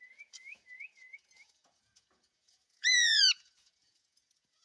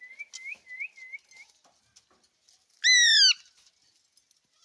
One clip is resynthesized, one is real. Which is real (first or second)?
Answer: second